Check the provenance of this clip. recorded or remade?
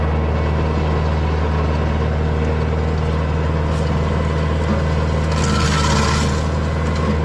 recorded